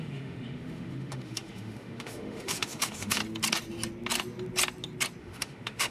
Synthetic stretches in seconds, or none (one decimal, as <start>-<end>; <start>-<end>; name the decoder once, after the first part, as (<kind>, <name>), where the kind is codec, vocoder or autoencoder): 0.0-3.2 (autoencoder, DAC-VAE); 5.2-5.9